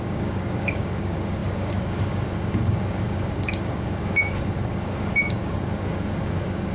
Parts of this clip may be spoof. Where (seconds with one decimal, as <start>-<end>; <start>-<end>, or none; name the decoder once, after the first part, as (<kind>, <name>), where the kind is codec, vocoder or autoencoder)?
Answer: 0.0-6.7 (codec, DAC)